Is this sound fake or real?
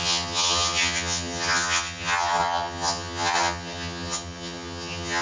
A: fake